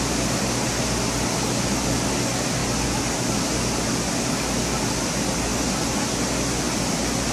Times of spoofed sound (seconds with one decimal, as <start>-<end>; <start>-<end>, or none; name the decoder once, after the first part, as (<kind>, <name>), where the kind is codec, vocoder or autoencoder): none